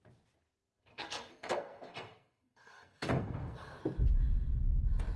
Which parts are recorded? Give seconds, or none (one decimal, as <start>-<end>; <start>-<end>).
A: 0.0-0.7; 3.8-5.2